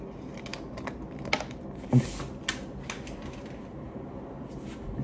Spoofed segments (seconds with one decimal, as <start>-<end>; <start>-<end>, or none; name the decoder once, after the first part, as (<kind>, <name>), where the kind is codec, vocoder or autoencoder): none